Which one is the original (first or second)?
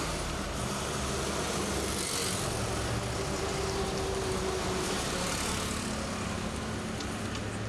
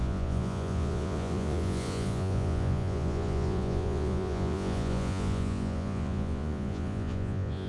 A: first